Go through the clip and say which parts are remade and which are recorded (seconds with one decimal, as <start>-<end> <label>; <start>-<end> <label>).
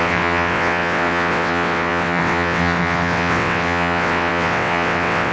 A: 0.0-5.3 remade